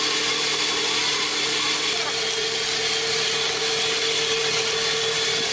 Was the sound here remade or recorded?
recorded